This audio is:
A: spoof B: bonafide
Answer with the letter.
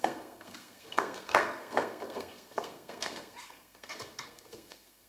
A